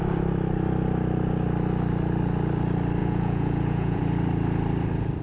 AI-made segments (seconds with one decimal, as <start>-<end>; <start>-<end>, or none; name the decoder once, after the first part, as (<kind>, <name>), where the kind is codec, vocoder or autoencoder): 3.0-4.0 (vocoder, Vocos)